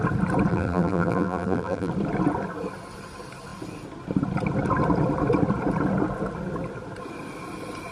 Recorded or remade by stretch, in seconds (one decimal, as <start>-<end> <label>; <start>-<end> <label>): 0.0-0.5 recorded; 0.5-1.9 remade; 1.9-7.9 recorded